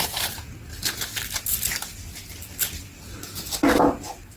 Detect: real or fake real